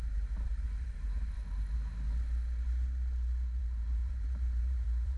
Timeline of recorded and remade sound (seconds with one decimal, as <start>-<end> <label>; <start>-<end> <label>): 0.0-1.4 remade; 1.4-3.6 recorded; 3.6-5.2 remade